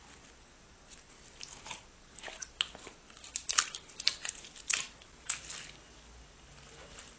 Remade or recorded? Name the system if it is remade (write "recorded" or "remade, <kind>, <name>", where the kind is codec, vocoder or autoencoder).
recorded